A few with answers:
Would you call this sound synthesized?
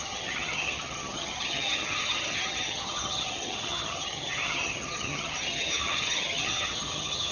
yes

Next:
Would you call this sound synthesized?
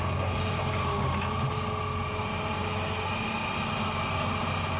no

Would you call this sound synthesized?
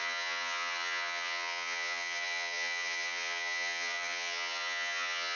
yes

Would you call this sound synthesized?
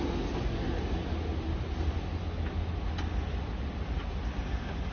no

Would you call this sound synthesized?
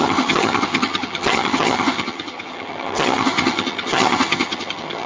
yes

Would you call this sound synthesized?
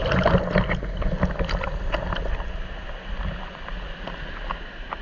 no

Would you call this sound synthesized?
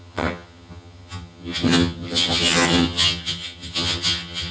yes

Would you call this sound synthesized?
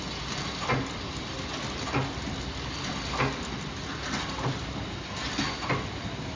no